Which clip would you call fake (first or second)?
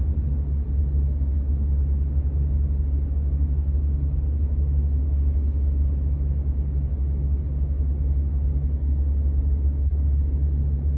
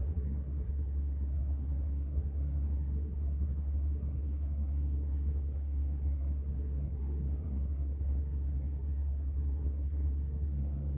second